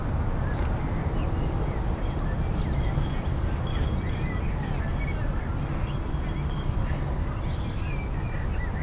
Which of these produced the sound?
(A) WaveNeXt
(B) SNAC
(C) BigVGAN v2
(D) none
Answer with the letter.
D